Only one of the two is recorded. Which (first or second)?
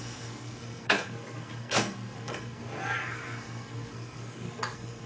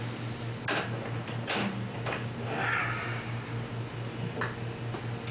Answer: second